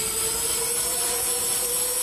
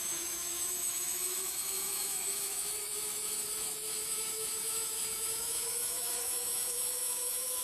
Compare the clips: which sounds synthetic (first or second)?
second